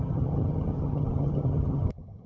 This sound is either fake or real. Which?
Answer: fake